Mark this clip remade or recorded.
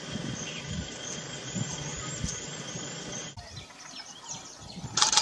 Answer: recorded